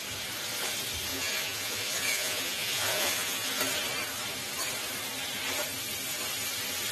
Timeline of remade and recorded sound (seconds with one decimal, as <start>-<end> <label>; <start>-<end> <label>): 0.0-1.1 recorded; 1.1-3.5 remade; 3.5-6.9 recorded